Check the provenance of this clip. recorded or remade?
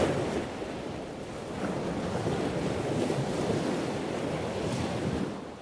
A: recorded